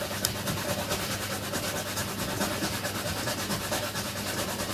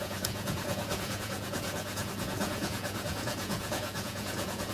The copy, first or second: second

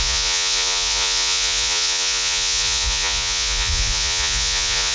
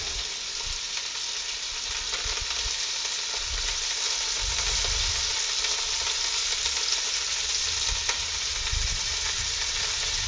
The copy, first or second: first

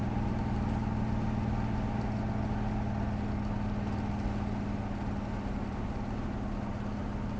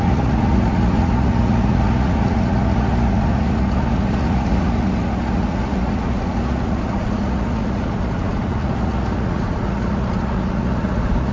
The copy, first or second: second